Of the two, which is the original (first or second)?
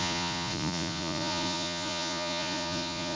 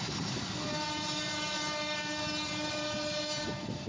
second